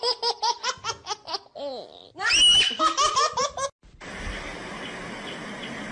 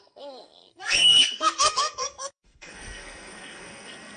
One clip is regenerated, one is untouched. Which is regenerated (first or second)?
second